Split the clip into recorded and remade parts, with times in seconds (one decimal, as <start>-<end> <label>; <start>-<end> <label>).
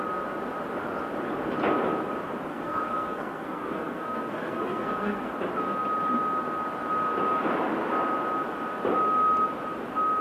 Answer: 0.0-2.5 recorded; 2.5-5.3 remade; 5.3-10.2 recorded